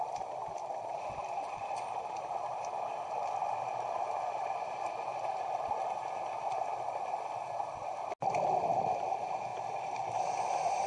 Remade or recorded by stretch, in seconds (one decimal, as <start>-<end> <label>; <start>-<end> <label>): 0.0-10.9 recorded